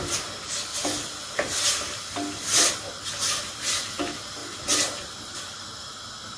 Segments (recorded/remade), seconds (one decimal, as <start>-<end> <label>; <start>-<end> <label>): 0.0-6.4 recorded